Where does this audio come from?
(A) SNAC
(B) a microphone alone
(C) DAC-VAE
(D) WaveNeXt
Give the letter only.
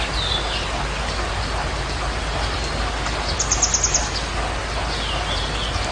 B